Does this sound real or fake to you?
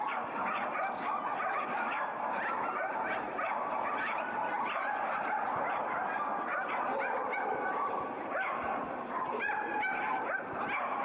real